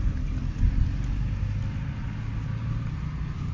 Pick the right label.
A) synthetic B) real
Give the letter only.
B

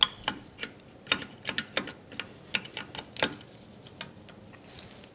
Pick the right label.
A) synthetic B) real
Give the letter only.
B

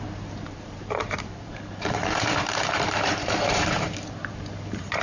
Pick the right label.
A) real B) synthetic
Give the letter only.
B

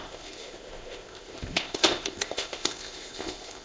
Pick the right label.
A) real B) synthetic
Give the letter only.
B